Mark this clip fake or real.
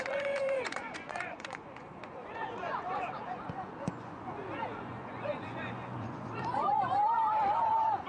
fake